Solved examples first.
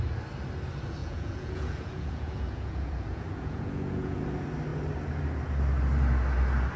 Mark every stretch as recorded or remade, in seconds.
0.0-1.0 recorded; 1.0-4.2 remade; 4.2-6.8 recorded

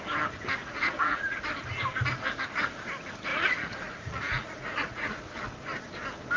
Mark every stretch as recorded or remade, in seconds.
0.0-0.6 recorded; 0.6-1.4 remade; 1.4-3.3 recorded; 3.3-5.2 remade; 5.2-6.4 recorded

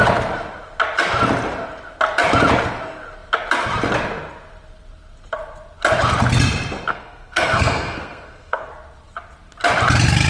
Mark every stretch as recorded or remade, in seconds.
0.0-6.9 recorded; 6.9-8.7 remade; 8.7-10.3 recorded